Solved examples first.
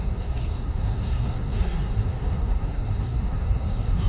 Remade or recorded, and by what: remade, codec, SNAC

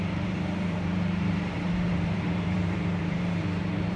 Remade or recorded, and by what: remade, vocoder, BigVGAN v2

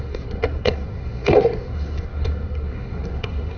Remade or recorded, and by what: remade, codec, SNAC